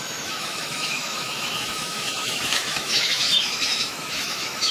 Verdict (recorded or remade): remade